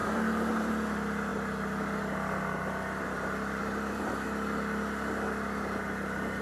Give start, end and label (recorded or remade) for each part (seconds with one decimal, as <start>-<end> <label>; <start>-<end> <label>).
0.0-0.7 remade; 0.7-3.6 recorded; 3.6-4.1 remade; 4.1-6.4 recorded